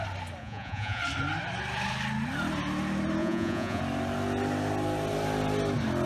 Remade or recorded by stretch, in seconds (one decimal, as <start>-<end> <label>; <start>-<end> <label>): 0.0-0.4 recorded; 0.4-1.0 remade; 1.0-3.2 recorded; 3.2-3.8 remade; 3.8-6.1 recorded